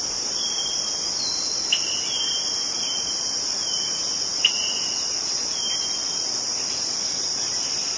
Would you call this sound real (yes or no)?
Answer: yes